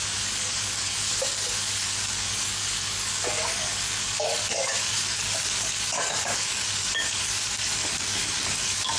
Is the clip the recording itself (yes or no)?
no